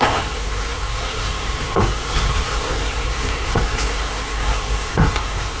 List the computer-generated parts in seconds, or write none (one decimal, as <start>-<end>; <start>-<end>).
0.0-5.6